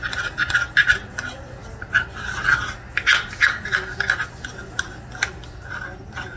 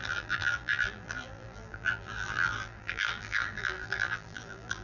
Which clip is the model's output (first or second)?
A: second